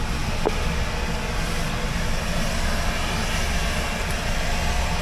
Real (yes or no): yes